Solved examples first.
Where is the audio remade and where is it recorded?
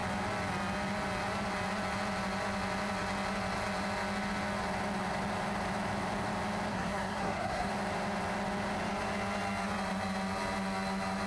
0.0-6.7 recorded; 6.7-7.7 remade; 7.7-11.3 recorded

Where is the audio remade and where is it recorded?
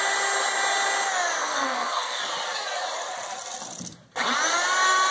0.0-1.4 recorded; 1.4-2.2 remade; 2.2-5.1 recorded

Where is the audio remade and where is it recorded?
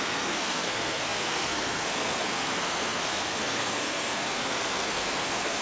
0.0-5.6 remade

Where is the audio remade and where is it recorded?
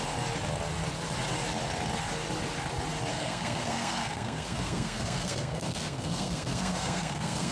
0.0-3.1 recorded; 3.1-7.5 remade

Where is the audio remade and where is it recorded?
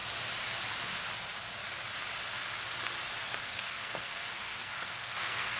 0.0-3.4 recorded; 3.4-5.6 remade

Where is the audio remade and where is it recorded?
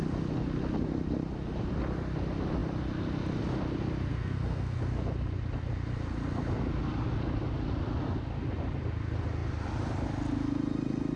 0.0-4.1 recorded; 4.1-4.8 remade; 4.8-11.2 recorded